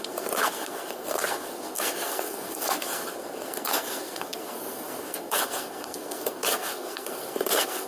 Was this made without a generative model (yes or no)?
no